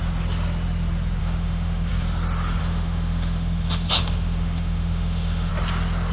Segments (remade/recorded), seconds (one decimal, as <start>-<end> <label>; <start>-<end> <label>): 0.0-1.2 recorded; 1.2-1.9 remade; 1.9-2.6 recorded; 2.6-5.5 remade; 5.5-6.1 recorded